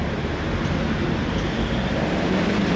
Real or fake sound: real